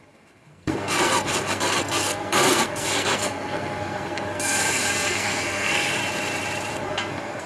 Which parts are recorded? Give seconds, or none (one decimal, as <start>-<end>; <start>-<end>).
6.0-6.7

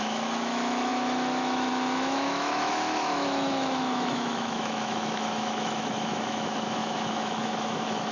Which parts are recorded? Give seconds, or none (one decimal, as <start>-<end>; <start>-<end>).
none

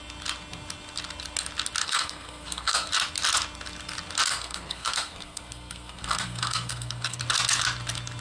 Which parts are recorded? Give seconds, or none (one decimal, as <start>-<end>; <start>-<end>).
0.0-1.8; 2.9-4.3; 7.2-8.2

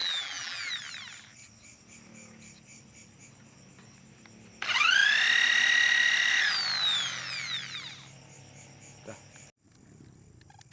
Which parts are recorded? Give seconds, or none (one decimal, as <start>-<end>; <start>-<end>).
0.7-10.7

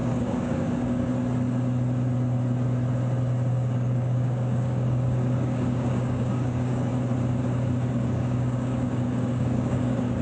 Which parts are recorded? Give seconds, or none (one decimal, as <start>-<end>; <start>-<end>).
1.1-3.5; 6.9-7.9

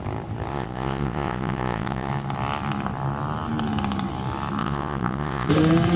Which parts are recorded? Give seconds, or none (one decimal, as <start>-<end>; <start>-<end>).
0.0-0.5; 2.1-4.6; 5.5-6.0

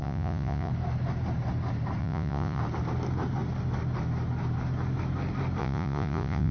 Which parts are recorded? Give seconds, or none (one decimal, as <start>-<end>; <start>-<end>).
0.7-2.0; 2.6-5.6